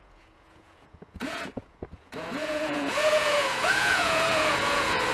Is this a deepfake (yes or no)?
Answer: yes